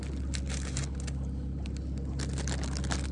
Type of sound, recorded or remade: recorded